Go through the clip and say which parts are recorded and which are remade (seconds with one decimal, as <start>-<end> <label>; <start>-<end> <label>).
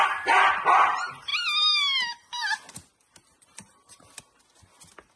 0.0-5.2 recorded